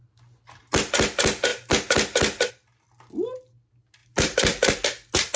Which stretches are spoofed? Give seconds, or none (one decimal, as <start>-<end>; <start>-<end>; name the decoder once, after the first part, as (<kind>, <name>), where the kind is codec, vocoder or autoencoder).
4.0-4.7 (vocoder, BigVGAN v2)